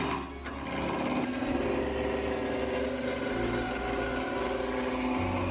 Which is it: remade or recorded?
recorded